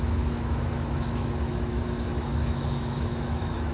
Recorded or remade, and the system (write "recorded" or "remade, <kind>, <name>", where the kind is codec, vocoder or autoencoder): remade, autoencoder, DAC-VAE